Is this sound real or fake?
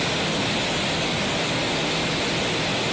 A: real